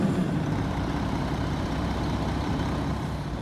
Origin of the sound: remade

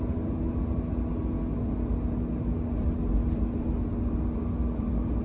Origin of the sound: recorded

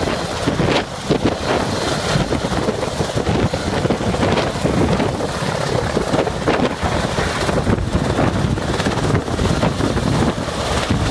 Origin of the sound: recorded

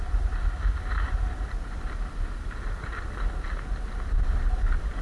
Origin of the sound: recorded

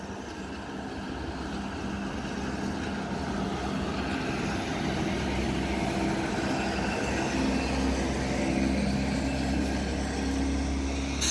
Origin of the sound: recorded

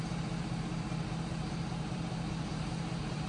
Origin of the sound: remade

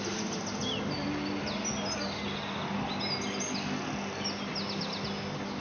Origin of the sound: recorded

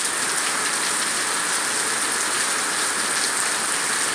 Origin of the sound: recorded